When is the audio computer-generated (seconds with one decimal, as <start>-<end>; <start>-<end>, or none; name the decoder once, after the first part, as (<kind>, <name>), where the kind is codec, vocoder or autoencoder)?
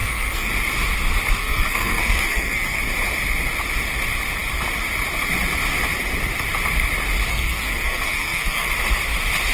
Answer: 0.0-0.5 (codec, SNAC); 1.4-2.8; 7.3-8.7